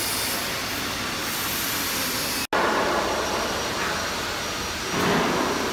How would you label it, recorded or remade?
recorded